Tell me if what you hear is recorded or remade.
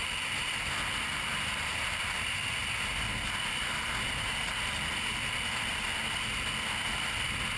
recorded